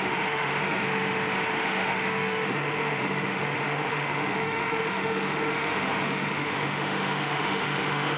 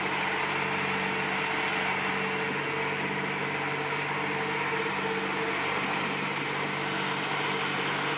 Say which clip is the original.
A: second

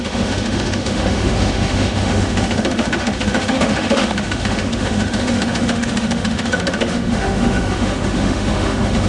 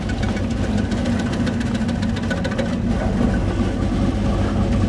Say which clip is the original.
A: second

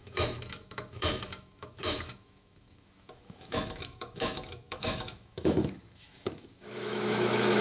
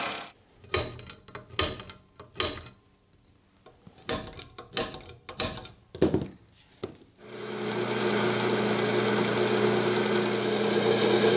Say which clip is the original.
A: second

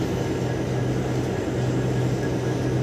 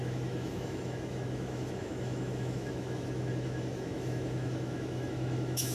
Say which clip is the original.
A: first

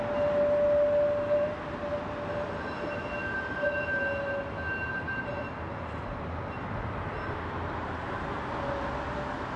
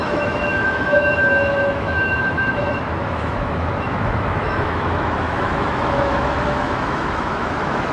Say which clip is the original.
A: first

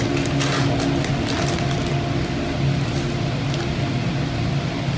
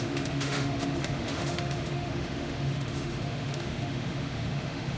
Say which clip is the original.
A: first